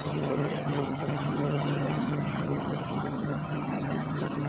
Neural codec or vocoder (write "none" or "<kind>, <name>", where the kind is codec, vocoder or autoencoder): vocoder, HiFi-GAN